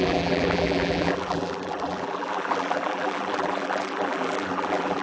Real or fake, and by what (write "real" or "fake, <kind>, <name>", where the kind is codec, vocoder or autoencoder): fake, vocoder, BigVGAN v2